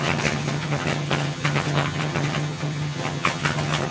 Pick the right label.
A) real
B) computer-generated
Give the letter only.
B